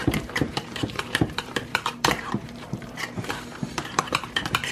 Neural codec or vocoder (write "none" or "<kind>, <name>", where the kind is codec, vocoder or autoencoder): vocoder, BigVGAN v2